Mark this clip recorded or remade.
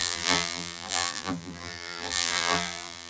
remade